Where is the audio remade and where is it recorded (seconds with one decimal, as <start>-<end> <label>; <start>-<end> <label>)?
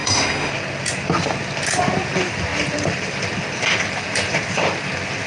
0.0-0.5 remade; 0.5-5.3 recorded